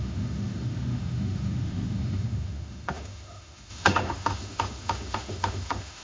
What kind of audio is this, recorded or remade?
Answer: remade